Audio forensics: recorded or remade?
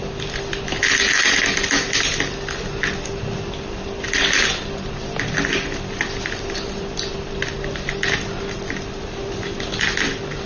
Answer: recorded